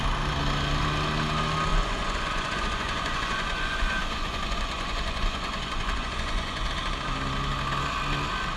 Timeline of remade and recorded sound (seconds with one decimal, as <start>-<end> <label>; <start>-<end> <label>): 0.0-1.7 recorded; 1.7-6.7 remade; 6.7-8.6 recorded